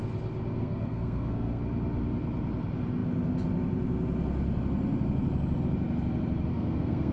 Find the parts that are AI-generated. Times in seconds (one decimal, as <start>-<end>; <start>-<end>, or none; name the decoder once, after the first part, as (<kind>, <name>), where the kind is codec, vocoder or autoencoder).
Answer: 0.6-1.6 (codec, SNAC); 6.5-7.1